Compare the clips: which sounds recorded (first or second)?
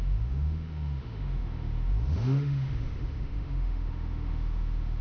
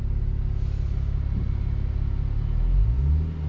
second